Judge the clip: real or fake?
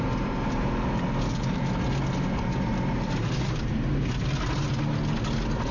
real